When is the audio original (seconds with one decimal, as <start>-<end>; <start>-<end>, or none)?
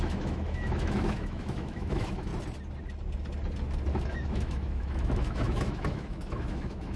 2.3-3.9